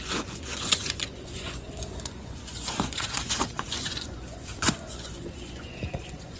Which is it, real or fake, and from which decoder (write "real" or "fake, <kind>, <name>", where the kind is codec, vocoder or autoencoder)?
fake, vocoder, Vocos